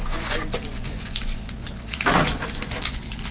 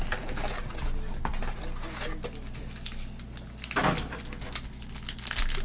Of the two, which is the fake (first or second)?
first